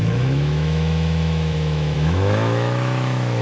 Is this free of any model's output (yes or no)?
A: no